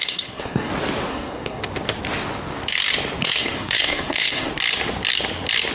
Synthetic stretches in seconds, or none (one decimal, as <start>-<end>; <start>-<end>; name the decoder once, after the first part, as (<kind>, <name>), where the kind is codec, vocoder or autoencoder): 0.0-0.7 (codec, SNAC); 1.1-1.6; 3.2-4.5